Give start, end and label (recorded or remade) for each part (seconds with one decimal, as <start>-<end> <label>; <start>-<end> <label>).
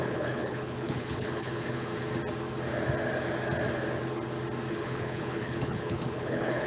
0.0-1.9 remade; 1.9-4.7 recorded; 4.7-6.7 remade